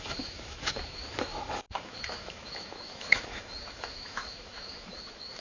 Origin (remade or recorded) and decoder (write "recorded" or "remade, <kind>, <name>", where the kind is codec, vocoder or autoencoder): remade, autoencoder, DAC-VAE